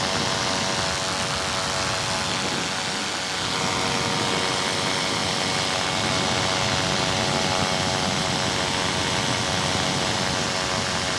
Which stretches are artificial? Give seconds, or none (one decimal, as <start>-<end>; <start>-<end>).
none